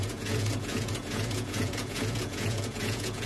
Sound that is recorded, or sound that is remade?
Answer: remade